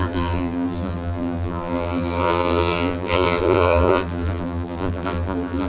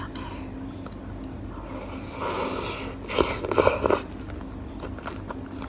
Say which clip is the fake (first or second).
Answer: first